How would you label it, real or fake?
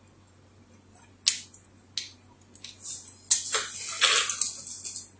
real